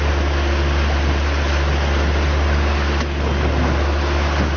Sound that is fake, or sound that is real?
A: real